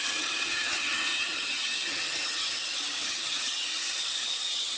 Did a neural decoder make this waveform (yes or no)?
yes